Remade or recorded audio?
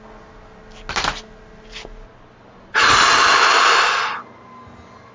recorded